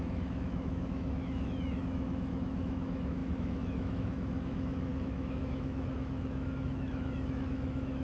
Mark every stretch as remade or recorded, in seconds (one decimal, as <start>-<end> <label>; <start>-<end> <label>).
0.0-8.0 remade